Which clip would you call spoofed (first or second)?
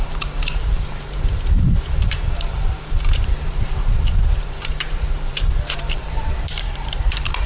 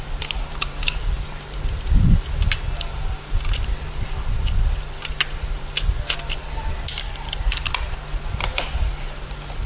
first